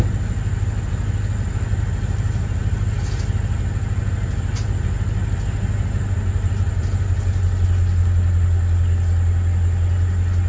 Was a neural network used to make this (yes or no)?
no